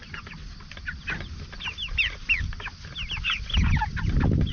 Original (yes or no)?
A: yes